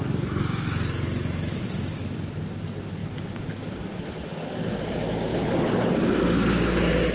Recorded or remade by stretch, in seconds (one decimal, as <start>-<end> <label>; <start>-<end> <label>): 0.0-5.3 recorded; 5.3-5.9 remade; 5.9-7.1 recorded